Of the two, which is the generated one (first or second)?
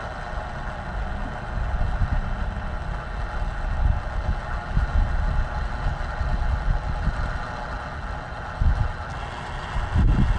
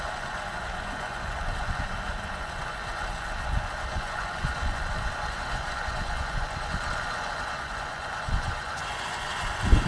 second